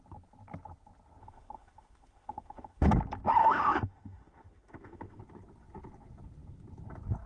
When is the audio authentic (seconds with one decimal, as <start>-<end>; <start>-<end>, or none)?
0.0-1.2; 2.9-3.4; 5.2-7.3